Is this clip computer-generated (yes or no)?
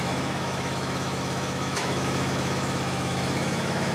yes